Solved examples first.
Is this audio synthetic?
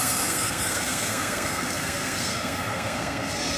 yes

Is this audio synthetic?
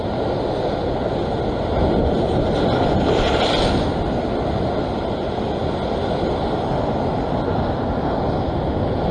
no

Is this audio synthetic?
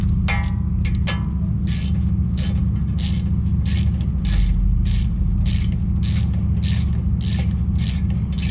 no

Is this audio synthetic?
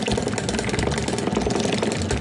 no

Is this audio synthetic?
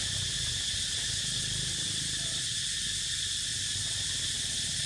no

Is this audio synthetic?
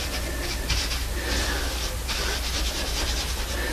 no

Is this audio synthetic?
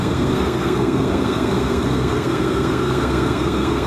yes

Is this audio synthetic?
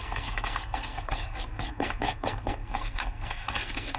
yes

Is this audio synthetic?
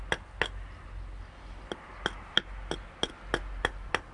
no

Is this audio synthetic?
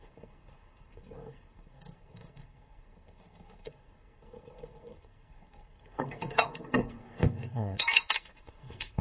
yes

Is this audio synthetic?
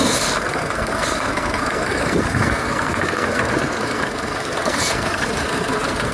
yes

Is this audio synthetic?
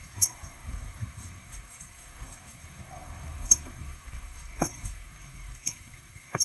yes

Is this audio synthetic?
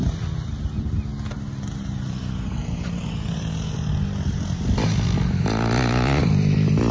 no